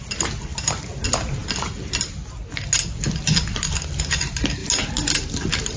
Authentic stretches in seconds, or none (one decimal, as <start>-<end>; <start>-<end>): 0.0-5.8